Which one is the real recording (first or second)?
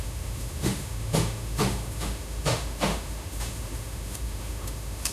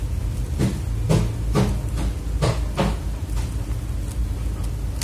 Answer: second